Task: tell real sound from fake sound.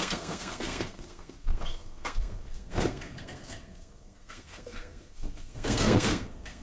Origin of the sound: fake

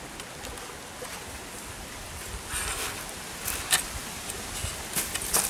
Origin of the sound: real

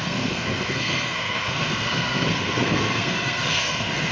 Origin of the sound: fake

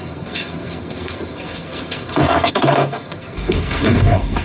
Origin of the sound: fake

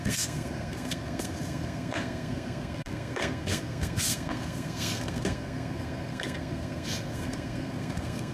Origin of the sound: fake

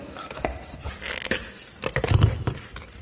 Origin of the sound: real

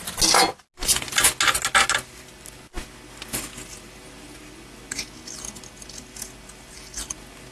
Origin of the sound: real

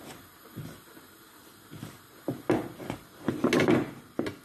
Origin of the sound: real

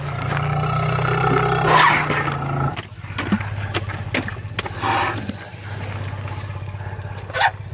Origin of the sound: real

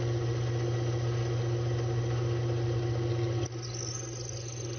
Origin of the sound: real